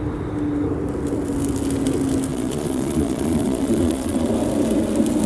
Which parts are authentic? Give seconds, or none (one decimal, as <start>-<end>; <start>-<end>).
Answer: 0.0-2.3; 4.3-5.3